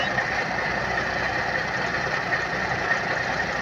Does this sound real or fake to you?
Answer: real